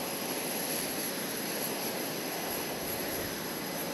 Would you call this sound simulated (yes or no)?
no